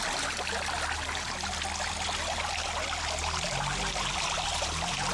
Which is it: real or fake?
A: real